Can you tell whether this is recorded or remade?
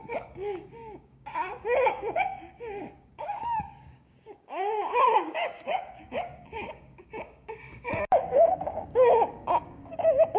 remade